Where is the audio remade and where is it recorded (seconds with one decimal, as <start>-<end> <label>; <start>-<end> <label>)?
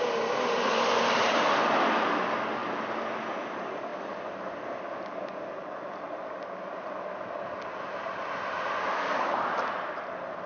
0.0-10.5 recorded